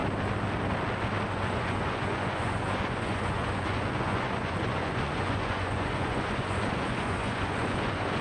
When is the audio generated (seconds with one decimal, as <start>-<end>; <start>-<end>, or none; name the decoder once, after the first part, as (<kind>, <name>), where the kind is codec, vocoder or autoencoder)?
1.3-8.2 (vocoder, Vocos)